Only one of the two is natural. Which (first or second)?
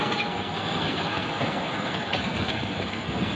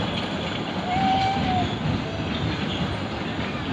second